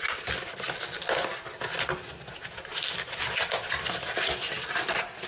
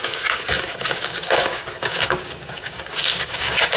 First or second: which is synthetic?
second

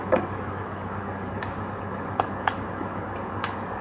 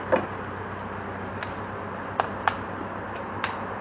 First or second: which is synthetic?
first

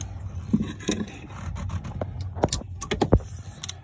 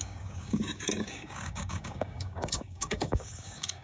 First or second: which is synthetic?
second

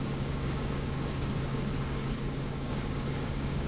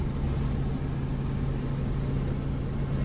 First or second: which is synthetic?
first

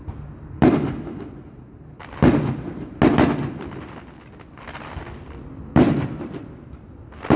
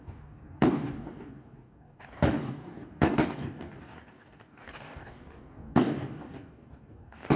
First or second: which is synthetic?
second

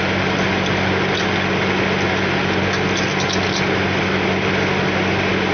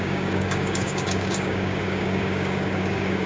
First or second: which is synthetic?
second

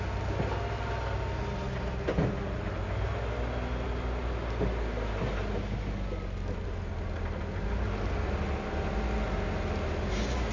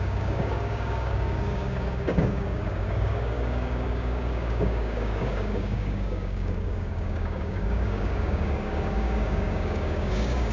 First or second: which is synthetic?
second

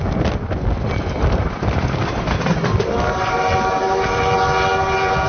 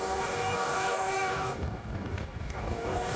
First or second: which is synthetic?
second